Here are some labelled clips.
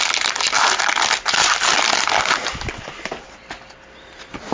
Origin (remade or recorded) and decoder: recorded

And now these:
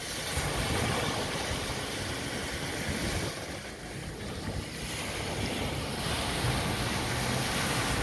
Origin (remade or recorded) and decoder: recorded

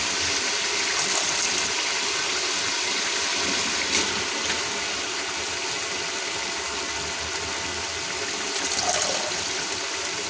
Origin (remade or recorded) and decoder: recorded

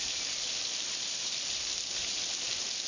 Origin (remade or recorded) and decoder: remade, vocoder, BigVGAN v2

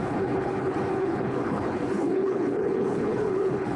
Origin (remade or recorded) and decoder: remade, codec, HILCodec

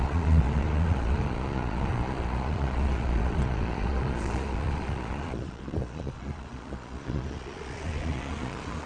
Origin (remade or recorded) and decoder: remade, vocoder, Vocos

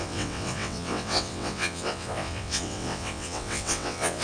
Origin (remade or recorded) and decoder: remade, vocoder, WaveNeXt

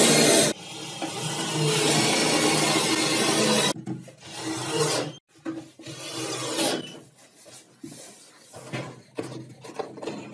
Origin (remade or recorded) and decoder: recorded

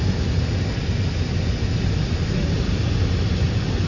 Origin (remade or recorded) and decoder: recorded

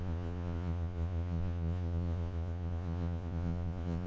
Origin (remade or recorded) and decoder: remade, vocoder, Vocos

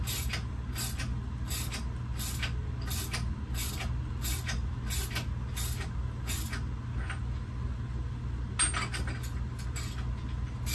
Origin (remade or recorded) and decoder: recorded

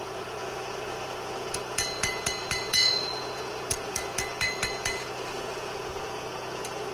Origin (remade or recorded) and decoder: remade, vocoder, Vocos